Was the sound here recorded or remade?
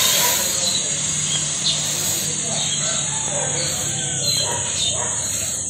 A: recorded